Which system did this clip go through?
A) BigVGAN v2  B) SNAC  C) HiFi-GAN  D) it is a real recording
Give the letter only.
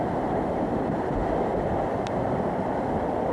D